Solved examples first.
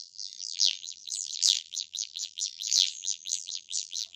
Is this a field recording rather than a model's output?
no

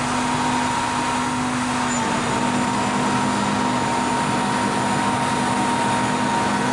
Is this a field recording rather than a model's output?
yes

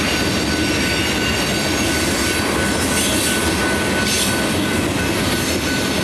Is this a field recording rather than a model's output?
yes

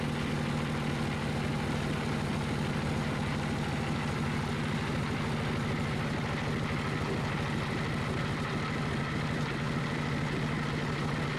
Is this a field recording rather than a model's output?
yes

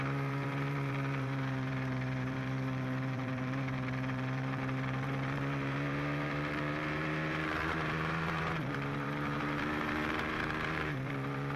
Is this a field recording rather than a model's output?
no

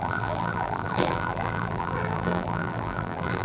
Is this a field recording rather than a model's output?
no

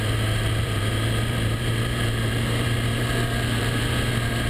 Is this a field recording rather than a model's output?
no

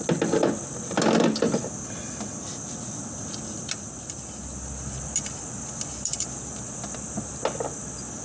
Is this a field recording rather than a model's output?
yes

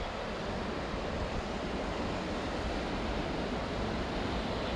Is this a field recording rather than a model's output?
yes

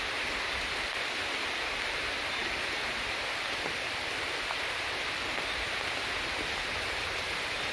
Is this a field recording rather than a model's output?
yes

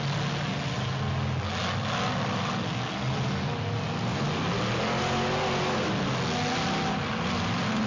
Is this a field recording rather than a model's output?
yes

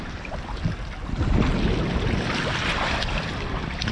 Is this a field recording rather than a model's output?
yes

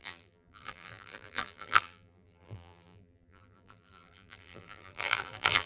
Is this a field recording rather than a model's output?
no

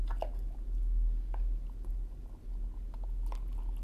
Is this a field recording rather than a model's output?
yes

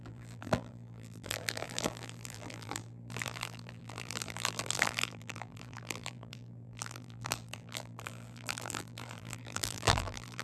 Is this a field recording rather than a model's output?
no